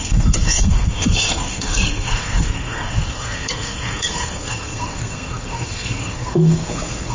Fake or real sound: fake